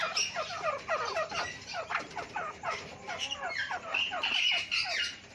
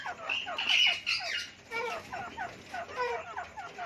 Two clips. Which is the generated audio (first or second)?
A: first